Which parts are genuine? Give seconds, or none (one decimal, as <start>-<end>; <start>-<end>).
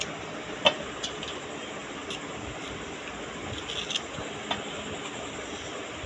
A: 0.0-6.1